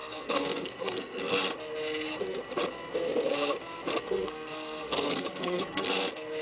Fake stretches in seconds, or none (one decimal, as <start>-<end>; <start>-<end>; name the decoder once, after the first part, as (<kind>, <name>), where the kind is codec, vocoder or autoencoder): 0.0-1.4 (codec, SNAC); 3.9-5.9